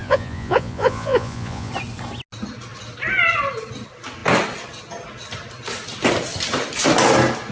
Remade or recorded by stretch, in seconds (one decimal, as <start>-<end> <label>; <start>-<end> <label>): 0.0-1.7 remade; 1.7-7.5 recorded